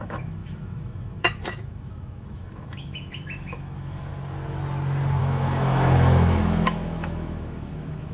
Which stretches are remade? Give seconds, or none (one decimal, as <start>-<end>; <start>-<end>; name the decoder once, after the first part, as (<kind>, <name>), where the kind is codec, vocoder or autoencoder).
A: 0.0-4.1 (autoencoder, DAC-VAE); 5.2-8.1